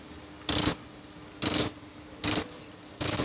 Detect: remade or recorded recorded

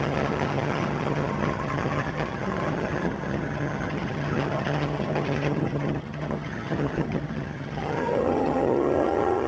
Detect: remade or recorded remade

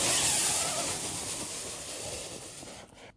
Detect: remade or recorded recorded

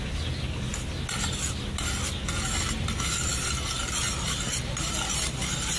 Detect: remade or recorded recorded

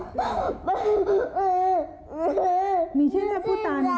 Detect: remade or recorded recorded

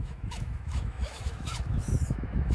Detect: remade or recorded remade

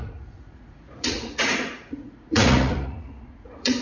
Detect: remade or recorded remade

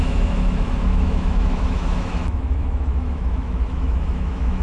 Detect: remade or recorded remade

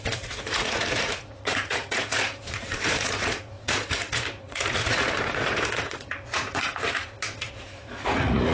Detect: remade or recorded remade